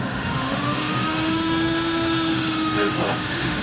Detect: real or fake fake